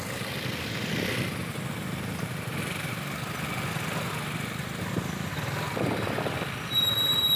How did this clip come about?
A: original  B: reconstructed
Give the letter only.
A